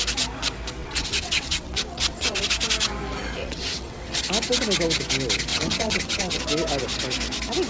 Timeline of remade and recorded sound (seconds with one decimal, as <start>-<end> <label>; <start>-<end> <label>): 0.0-0.8 recorded; 0.8-2.4 remade; 2.4-3.4 recorded; 3.4-4.2 remade; 4.2-5.5 recorded; 5.5-6.4 remade; 6.4-7.7 recorded